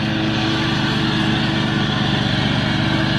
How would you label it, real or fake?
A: real